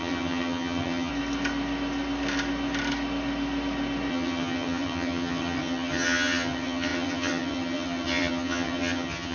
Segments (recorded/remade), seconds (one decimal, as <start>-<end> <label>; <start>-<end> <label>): 0.0-1.1 remade; 1.1-4.1 recorded; 4.1-9.3 remade